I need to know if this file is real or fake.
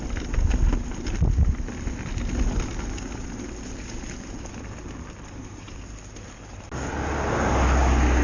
real